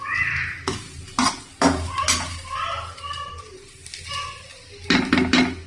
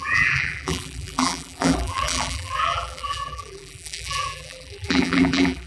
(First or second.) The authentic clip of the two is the first